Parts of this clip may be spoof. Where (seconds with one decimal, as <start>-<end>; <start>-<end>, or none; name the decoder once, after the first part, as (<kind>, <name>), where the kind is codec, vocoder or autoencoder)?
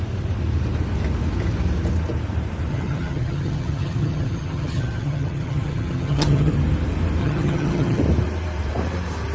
2.7-6.5 (vocoder, HiFi-GAN); 7.2-8.0